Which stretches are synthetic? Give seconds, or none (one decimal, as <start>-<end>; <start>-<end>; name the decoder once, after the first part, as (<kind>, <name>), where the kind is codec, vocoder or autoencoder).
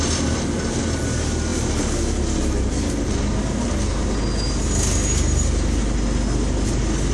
none